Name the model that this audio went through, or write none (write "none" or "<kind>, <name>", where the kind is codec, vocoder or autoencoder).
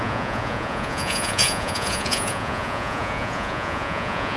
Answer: vocoder, Vocos